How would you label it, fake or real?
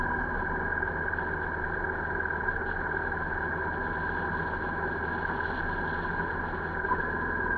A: real